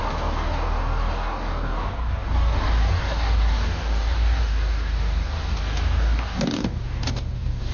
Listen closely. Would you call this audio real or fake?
fake